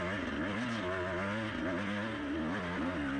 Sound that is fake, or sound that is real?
real